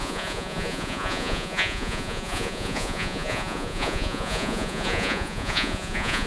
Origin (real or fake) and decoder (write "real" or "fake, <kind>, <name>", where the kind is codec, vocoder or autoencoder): fake, vocoder, Vocos